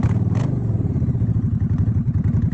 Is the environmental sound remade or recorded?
recorded